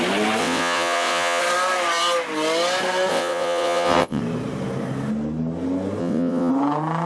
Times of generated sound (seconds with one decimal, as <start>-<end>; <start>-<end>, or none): 0.4-1.4; 3.1-4.2; 6.0-6.5